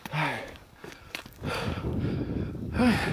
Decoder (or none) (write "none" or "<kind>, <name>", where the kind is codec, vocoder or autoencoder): codec, DAC